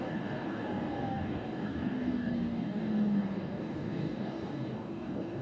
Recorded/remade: remade